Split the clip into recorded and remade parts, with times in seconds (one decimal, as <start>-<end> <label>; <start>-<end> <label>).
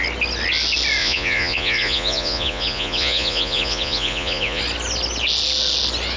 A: 0.0-1.0 recorded; 1.0-4.6 remade; 4.6-6.2 recorded